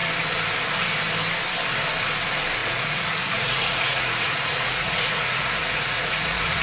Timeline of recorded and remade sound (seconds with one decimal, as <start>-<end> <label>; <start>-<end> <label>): 0.0-2.6 recorded; 2.6-6.6 remade